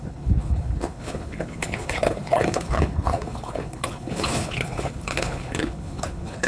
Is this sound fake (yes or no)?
yes